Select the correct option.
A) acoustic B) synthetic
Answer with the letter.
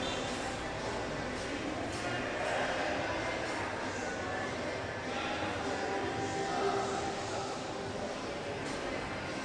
A